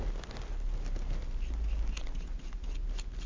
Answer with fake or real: real